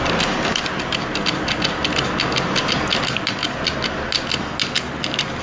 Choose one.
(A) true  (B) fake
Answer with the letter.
A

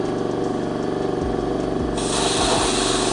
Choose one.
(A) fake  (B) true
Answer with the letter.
B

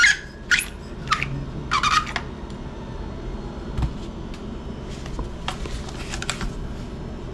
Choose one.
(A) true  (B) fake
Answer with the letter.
A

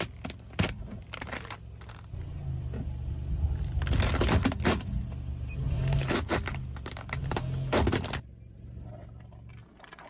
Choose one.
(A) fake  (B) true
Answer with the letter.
B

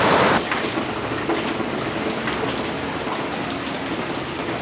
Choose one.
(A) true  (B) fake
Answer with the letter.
A